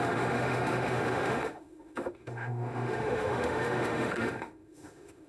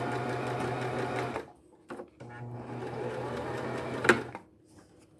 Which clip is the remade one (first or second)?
first